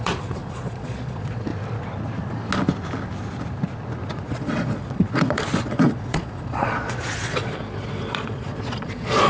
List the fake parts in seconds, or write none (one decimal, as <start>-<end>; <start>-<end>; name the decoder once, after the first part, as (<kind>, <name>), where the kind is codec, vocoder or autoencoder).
0.0-1.5 (vocoder, Vocos); 4.1-9.3